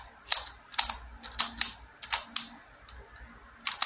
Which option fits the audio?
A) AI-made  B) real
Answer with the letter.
B